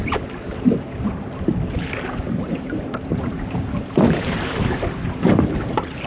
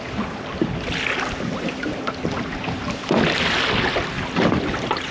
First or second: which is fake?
first